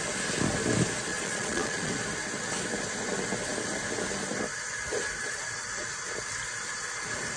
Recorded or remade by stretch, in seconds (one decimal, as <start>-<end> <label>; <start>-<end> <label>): 0.0-1.1 recorded; 1.1-1.9 remade; 1.9-7.4 recorded